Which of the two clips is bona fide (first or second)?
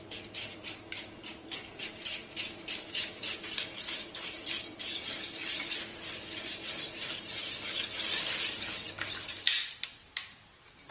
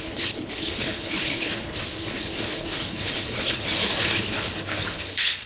first